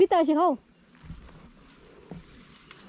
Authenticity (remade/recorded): recorded